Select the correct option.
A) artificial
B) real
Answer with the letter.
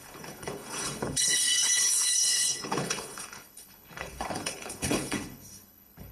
A